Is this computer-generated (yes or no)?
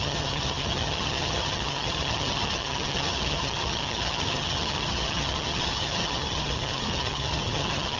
yes